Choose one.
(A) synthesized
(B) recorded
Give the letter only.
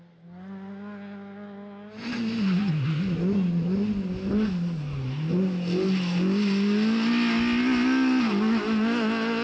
B